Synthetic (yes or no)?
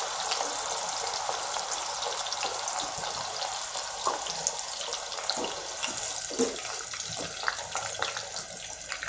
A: no